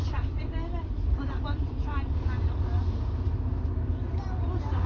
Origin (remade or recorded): recorded